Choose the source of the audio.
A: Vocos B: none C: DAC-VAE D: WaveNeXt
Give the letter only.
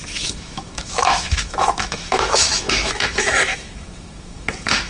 C